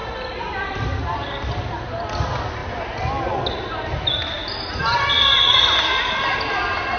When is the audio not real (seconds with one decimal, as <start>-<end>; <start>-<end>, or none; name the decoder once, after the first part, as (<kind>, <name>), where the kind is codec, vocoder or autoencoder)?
0.0-1.5 (vocoder, BigVGAN v2)